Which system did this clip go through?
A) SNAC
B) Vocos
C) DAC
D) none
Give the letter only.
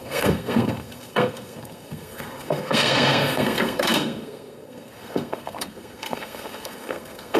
A